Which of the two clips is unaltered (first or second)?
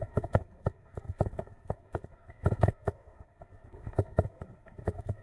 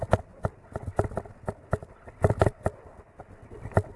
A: second